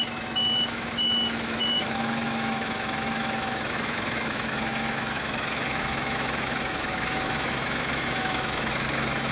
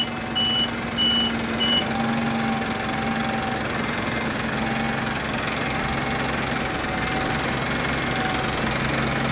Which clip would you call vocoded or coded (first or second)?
first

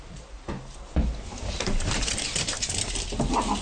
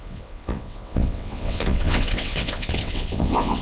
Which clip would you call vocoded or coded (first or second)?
second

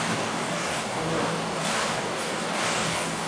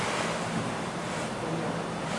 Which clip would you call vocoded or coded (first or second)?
first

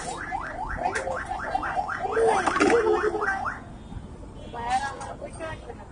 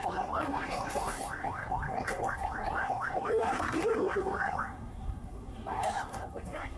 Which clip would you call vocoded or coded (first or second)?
second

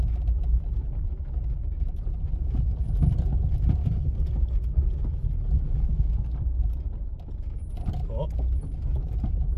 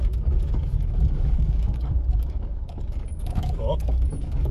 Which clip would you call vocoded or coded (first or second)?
second